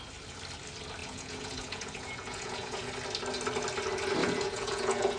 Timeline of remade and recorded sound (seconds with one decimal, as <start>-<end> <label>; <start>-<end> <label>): 0.0-1.0 recorded; 1.0-2.9 remade; 2.9-4.2 recorded; 4.2-5.2 remade